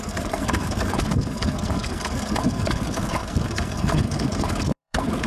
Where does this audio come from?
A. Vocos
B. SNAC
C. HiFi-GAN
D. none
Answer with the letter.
B